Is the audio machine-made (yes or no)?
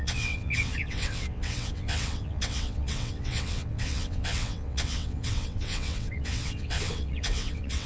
yes